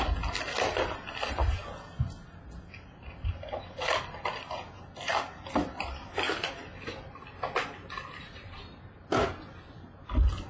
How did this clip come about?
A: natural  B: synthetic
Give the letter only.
A